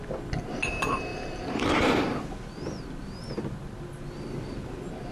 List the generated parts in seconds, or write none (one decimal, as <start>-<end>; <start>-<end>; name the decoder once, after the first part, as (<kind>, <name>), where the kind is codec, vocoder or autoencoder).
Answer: 1.1-2.0 (vocoder, BigVGAN v2)